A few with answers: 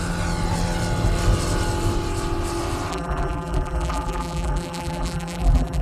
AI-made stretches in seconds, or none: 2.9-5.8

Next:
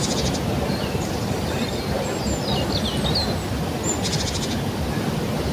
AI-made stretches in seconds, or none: none

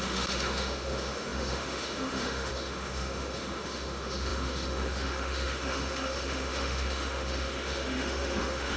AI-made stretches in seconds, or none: 0.0-8.8

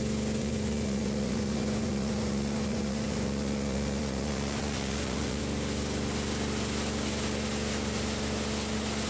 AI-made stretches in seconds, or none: 0.4-5.4

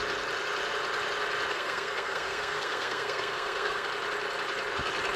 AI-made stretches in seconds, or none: 1.5-3.9

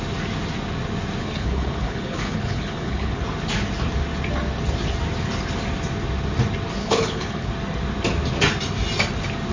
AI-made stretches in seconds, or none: 1.2-3.2; 6.8-7.5